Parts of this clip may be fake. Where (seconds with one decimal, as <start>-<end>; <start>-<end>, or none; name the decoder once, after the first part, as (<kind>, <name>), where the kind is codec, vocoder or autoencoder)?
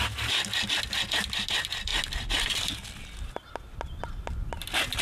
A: none